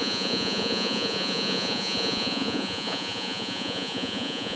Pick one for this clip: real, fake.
fake